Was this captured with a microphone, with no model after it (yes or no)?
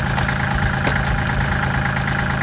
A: yes